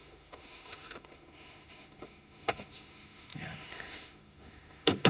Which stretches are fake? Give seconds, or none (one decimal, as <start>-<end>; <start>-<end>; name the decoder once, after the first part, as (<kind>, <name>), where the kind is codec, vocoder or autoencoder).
0.0-5.1 (autoencoder, DAC-VAE)